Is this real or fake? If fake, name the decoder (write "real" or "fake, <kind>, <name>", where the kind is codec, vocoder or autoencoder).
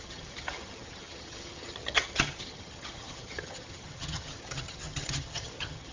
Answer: fake, vocoder, HiFi-GAN